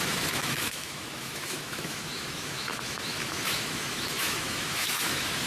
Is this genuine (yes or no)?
no